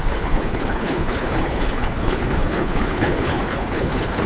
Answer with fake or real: fake